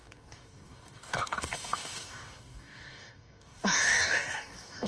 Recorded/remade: remade